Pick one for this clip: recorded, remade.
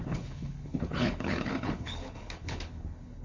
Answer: remade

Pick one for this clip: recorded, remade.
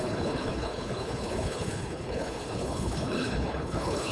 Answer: remade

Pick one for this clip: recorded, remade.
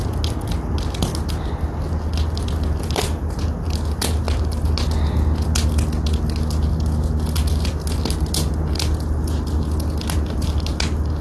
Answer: recorded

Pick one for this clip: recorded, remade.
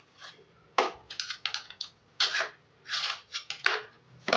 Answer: recorded